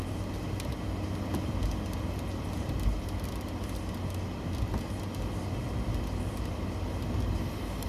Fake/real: real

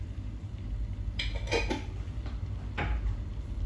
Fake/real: real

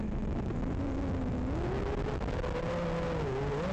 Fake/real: real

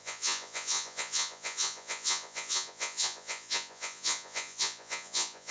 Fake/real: fake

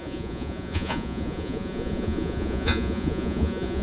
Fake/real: fake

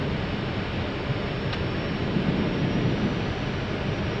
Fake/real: real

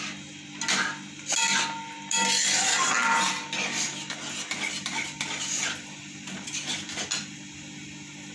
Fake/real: real